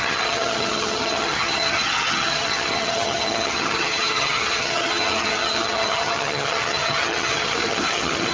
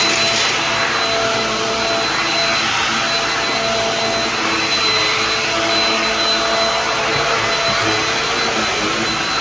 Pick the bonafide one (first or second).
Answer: second